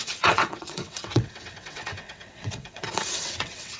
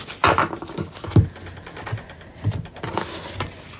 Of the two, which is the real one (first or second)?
second